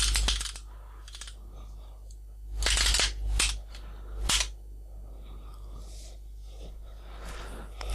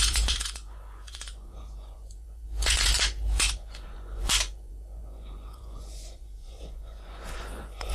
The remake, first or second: second